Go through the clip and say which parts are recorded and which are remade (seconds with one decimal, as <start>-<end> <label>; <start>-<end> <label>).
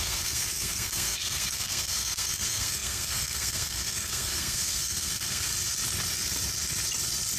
0.0-5.5 remade; 5.5-7.4 recorded